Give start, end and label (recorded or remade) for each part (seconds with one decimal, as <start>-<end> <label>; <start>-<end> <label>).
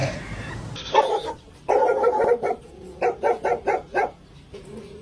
0.0-2.6 remade; 2.6-5.0 recorded